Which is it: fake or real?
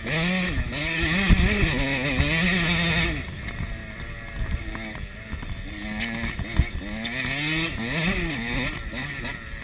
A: real